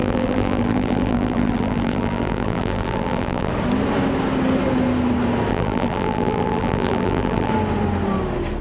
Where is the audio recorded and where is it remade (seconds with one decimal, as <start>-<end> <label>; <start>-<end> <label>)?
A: 0.0-3.5 remade; 3.5-5.5 recorded; 5.5-7.5 remade; 7.5-8.6 recorded